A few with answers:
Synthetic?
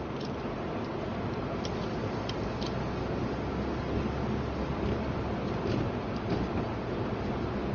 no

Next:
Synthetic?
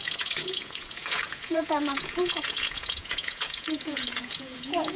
yes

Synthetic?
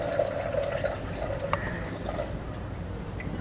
no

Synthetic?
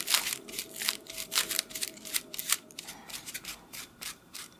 yes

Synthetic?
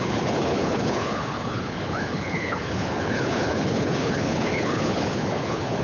yes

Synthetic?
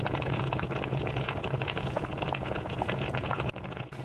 yes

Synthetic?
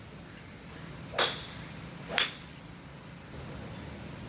no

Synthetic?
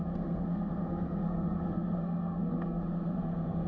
yes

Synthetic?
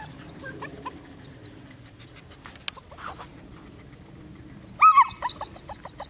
no